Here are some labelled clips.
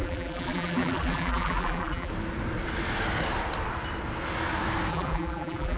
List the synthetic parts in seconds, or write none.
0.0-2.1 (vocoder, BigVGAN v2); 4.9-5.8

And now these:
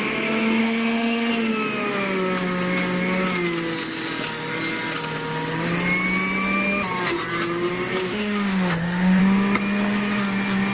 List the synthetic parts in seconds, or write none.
0.6-1.3 (autoencoder, DAC-VAE); 8.1-9.2